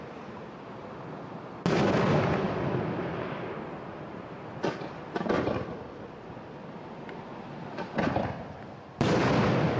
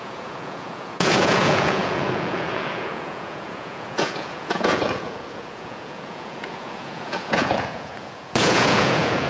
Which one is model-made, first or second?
second